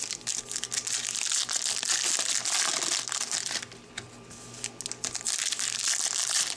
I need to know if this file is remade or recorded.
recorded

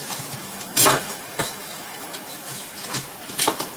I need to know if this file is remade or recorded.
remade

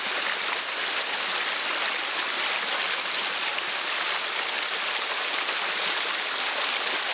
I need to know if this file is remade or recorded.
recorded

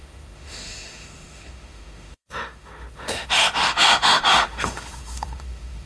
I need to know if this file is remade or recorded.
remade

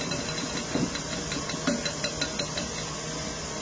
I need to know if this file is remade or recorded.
recorded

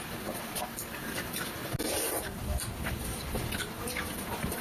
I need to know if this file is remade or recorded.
recorded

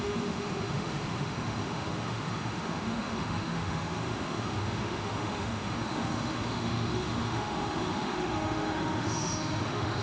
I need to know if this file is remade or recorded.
remade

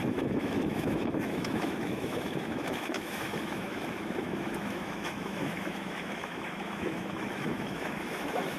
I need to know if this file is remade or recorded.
remade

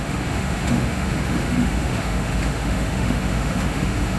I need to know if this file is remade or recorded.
remade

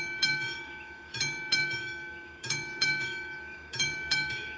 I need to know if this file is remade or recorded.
remade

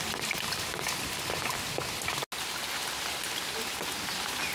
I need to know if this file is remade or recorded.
recorded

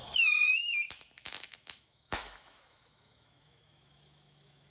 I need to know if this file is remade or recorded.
remade